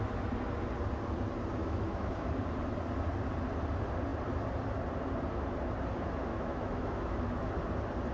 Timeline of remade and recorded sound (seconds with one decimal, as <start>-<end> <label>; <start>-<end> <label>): 0.0-1.6 recorded; 1.6-2.3 remade; 2.3-6.3 recorded; 6.3-7.5 remade; 7.5-8.1 recorded